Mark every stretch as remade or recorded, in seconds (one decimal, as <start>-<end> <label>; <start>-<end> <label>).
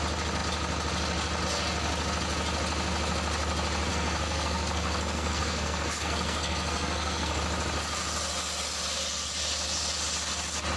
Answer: 0.0-3.9 recorded; 3.9-7.4 remade; 7.4-10.8 recorded